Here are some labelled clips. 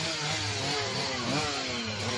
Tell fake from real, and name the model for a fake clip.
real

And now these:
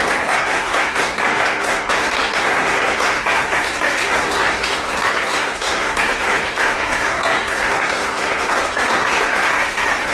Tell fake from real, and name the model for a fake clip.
fake, codec, SNAC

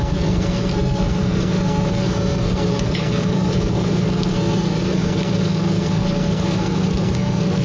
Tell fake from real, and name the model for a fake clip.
fake, codec, SNAC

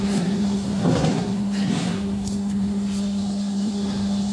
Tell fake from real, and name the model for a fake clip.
fake, codec, SNAC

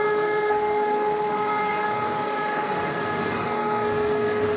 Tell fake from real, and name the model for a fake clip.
fake, codec, SNAC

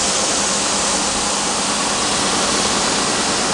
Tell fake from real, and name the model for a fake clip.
real